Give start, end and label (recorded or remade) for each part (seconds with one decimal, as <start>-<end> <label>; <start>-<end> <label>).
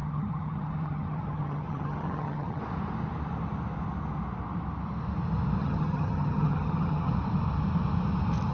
0.0-2.6 remade; 2.6-5.6 recorded; 5.6-7.1 remade; 7.1-8.5 recorded